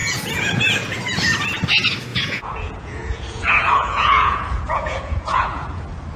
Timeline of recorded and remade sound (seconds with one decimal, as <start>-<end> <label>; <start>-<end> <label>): 0.0-1.0 remade; 1.0-2.1 recorded; 2.1-5.8 remade; 5.8-6.2 recorded